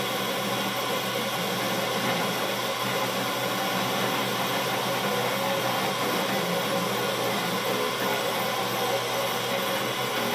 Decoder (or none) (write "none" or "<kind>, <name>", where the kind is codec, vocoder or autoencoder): none